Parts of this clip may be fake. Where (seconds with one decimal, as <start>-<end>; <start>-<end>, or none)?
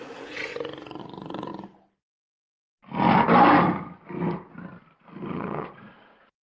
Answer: 0.0-0.5; 1.0-1.5; 5.3-6.4